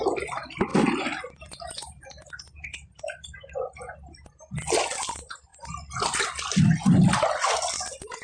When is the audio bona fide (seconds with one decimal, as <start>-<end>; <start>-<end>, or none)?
0.0-8.2

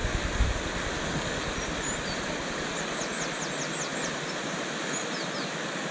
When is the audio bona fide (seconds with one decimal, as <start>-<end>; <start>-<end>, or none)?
0.0-3.9; 4.6-5.9

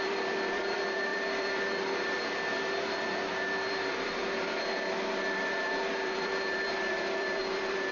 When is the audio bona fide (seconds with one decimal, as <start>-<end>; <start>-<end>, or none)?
none

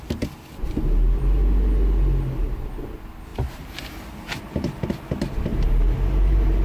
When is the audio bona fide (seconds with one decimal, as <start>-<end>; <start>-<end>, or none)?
0.0-3.3; 4.4-5.5

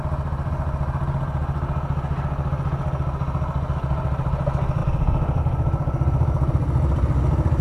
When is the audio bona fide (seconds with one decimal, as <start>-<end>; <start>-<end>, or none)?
0.0-7.6

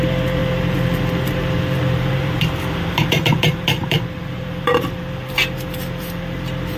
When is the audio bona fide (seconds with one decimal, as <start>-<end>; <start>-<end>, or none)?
none